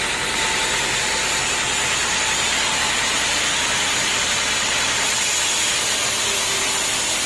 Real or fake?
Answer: real